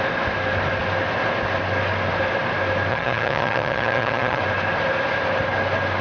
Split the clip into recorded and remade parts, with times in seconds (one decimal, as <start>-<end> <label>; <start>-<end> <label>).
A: 0.0-2.9 recorded; 2.9-4.4 remade; 4.4-6.0 recorded